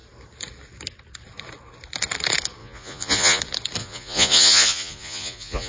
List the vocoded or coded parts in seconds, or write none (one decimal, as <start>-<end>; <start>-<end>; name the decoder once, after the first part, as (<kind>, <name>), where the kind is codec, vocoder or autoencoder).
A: 2.6-3.4 (vocoder, Vocos); 3.8-5.7